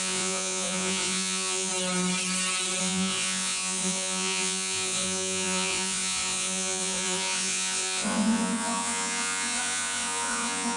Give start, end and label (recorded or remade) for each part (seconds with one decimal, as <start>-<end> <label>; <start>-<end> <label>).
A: 0.0-1.7 remade; 1.7-2.8 recorded; 2.8-10.8 remade

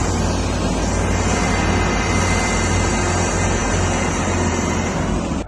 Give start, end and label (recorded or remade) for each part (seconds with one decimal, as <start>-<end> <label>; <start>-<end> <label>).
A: 0.0-5.5 recorded

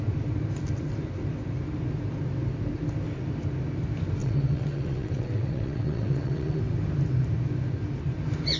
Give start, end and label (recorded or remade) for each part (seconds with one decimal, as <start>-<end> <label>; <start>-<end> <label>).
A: 0.0-4.2 recorded; 4.2-6.6 remade; 6.6-8.6 recorded